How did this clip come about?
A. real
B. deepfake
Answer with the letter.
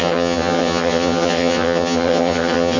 B